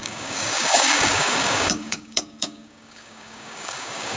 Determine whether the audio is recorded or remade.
remade